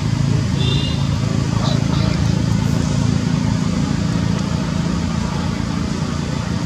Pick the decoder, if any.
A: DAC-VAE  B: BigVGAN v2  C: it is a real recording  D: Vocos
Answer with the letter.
C